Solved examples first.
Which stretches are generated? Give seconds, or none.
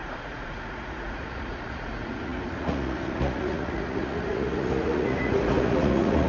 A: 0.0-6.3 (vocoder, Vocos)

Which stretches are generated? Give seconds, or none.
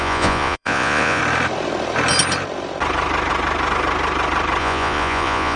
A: 0.0-1.2 (vocoder, Vocos); 4.6-5.6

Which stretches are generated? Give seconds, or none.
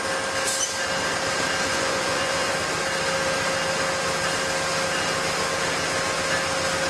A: 1.7-2.5 (vocoder, Vocos)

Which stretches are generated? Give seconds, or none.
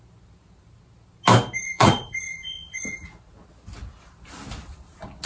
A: 1.6-3.1 (vocoder, Vocos)